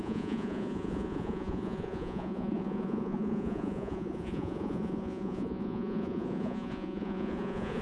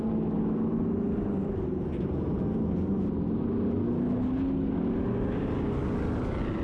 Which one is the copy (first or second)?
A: first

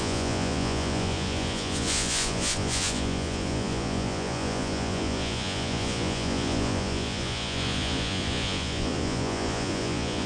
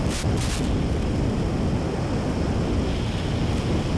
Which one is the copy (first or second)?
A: first